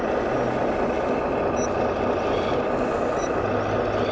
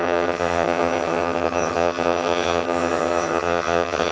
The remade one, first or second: second